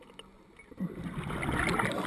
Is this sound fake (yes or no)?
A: no